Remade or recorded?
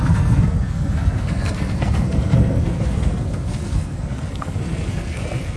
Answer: remade